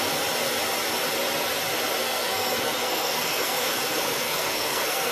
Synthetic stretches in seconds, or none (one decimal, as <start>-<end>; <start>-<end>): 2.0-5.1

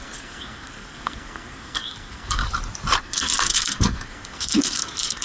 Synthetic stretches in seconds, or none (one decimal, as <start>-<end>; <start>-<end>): 0.0-2.4; 3.0-5.2

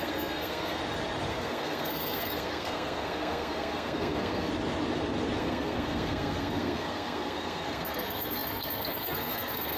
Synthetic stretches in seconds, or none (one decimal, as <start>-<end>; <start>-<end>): 0.0-0.8; 1.3-4.5; 5.4-9.8

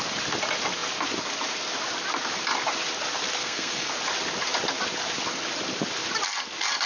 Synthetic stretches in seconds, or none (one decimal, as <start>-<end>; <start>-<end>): 3.4-3.9

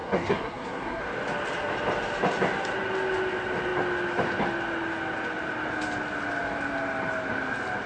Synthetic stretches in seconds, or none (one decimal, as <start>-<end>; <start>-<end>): 0.0-1.0

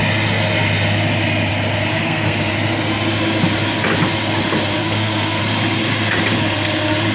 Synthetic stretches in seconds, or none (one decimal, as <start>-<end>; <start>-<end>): 1.9-2.5; 4.8-5.4

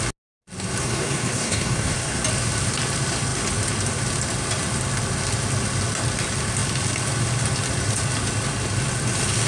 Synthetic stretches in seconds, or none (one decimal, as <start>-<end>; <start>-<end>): 0.8-2.2